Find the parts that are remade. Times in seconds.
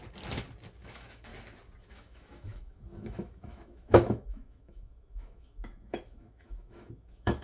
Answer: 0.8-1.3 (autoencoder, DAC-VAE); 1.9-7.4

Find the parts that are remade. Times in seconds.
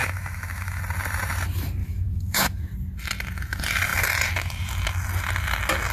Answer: 0.0-0.8 (autoencoder, DAC-VAE); 1.8-2.7